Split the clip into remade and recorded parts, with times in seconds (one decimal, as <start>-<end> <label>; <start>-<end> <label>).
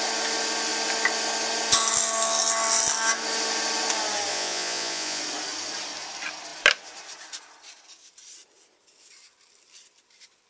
0.0-4.3 recorded; 4.3-5.2 remade; 5.2-10.5 recorded